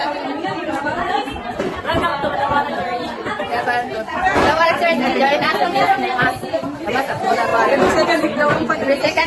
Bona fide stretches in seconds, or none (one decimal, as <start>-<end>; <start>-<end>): 0.0-9.3